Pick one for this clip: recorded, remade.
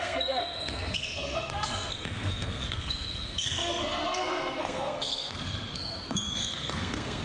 remade